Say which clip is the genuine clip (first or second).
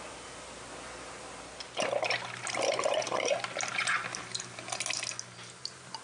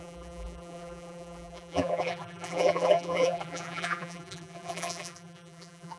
first